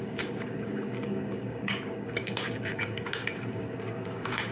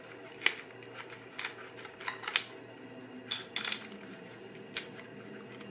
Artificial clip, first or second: first